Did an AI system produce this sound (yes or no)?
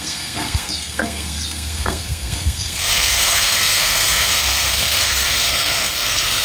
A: yes